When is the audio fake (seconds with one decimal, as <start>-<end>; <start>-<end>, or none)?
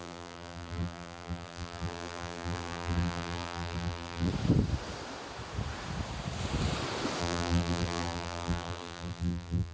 0.0-4.3; 7.2-9.7